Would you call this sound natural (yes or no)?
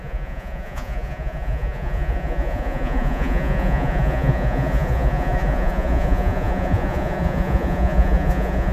no